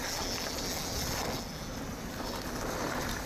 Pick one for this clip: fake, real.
real